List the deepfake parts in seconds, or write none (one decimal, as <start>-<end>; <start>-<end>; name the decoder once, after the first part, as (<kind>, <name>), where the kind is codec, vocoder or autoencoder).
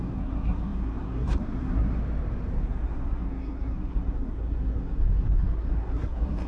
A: 0.0-2.0 (codec, SNAC); 2.6-6.5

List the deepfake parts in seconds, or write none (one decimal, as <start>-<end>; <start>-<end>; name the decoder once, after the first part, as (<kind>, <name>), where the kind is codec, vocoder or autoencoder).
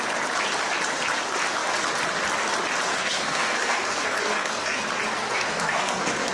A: 2.9-4.8 (codec, SNAC); 5.2-6.3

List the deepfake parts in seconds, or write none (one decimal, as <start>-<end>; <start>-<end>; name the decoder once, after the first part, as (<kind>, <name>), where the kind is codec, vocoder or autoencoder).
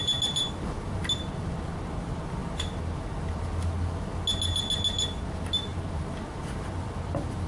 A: none